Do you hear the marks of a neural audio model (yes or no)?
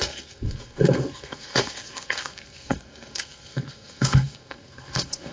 yes